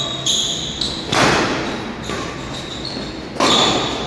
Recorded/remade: recorded